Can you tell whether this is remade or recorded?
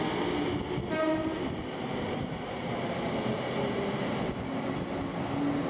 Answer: recorded